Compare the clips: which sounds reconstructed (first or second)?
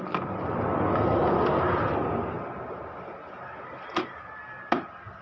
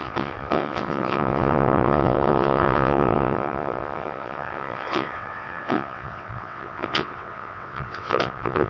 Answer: second